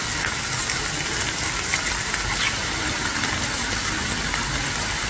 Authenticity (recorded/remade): recorded